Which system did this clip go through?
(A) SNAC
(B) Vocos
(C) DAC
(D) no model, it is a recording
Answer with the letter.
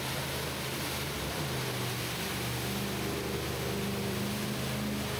D